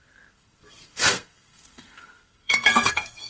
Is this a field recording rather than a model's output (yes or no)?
no